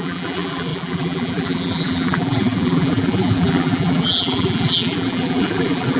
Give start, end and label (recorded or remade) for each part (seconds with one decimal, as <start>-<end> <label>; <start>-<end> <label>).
0.0-6.0 remade